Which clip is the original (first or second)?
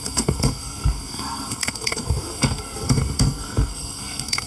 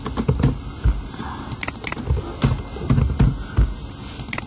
second